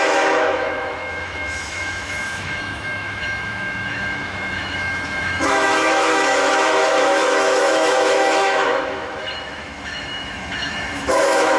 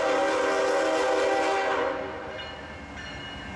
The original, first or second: second